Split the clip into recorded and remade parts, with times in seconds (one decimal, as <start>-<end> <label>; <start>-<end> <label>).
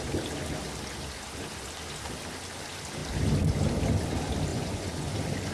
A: 0.0-4.5 recorded; 4.5-5.1 remade; 5.1-5.5 recorded